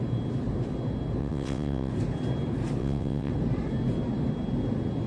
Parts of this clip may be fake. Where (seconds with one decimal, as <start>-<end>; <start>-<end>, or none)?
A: 1.2-1.9; 2.8-3.3